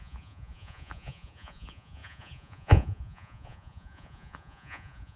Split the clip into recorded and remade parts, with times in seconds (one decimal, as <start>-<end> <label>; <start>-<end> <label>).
0.0-5.2 remade